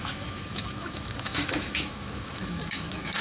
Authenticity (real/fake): fake